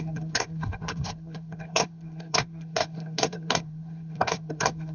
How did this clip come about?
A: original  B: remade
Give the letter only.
B